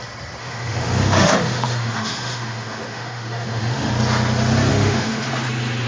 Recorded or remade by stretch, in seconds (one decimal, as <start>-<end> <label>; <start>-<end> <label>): 0.0-0.4 recorded; 0.4-3.9 remade; 3.9-4.7 recorded; 4.7-5.3 remade; 5.3-5.9 recorded